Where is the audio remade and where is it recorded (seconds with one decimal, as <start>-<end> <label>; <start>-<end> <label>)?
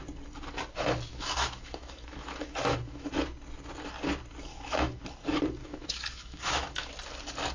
0.0-1.1 recorded; 1.1-3.2 remade; 3.2-4.5 recorded; 4.5-5.0 remade; 5.0-5.6 recorded; 5.6-6.9 remade; 6.9-7.5 recorded